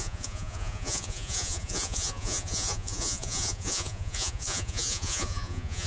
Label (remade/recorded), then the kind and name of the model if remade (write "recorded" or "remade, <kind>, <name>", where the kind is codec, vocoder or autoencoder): remade, vocoder, Vocos